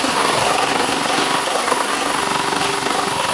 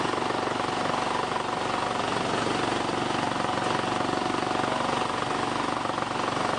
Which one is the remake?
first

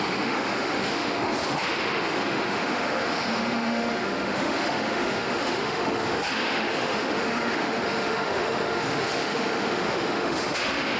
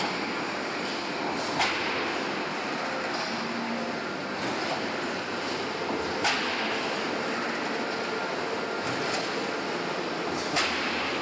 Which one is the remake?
first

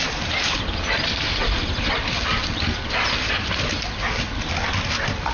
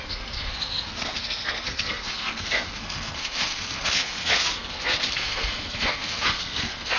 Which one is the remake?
second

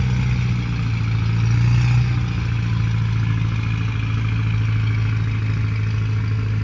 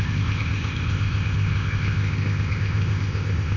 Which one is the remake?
second